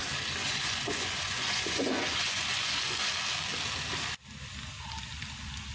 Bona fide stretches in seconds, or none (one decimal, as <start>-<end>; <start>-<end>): 0.0-0.4; 3.1-5.7